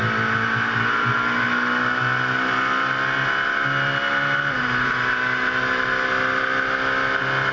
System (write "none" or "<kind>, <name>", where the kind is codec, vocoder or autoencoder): none